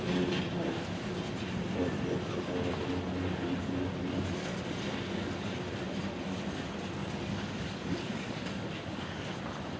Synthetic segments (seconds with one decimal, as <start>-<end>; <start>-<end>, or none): 7.0-9.4